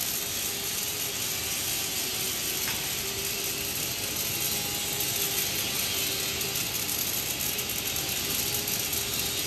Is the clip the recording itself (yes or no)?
yes